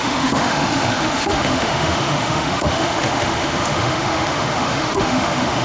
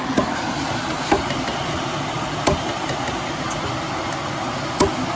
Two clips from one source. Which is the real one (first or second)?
second